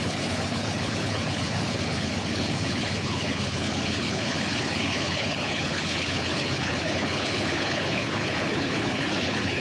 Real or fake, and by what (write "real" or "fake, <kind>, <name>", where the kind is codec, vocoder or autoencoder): fake, codec, HILCodec